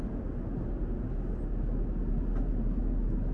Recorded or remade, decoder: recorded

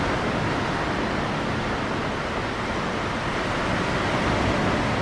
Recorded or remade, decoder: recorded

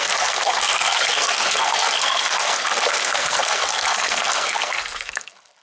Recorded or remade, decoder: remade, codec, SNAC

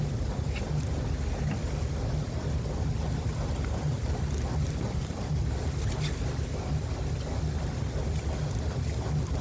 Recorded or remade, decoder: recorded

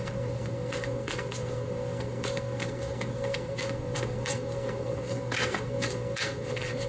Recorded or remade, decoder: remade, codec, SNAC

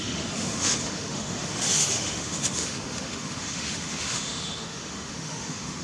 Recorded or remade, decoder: remade, autoencoder, DAC-VAE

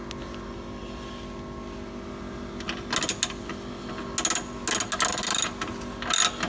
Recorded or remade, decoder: recorded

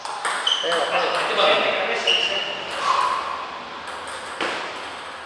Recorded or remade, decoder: recorded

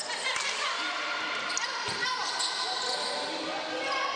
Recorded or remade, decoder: recorded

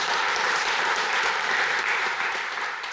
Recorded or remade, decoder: remade, vocoder, BigVGAN v2